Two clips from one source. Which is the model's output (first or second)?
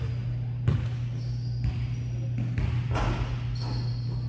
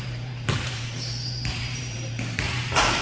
second